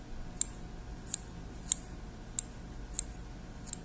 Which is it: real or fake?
real